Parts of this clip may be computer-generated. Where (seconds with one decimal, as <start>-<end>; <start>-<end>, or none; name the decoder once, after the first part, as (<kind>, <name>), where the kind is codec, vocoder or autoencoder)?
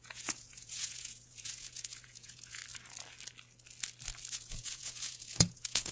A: 0.0-2.6 (vocoder, Vocos); 4.3-5.9